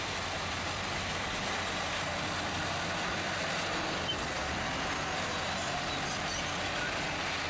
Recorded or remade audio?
recorded